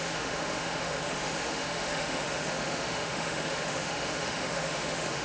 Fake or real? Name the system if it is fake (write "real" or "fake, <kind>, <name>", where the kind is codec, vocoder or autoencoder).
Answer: fake, autoencoder, DAC-VAE